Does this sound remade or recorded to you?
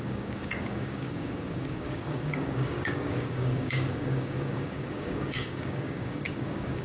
remade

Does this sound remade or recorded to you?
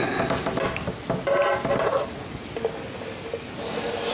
recorded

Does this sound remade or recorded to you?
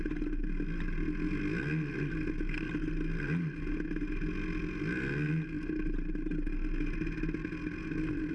recorded